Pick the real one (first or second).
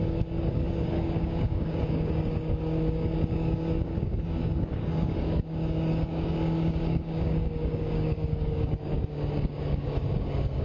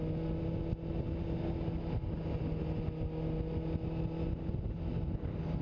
second